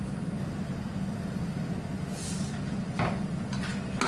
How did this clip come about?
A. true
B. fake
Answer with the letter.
A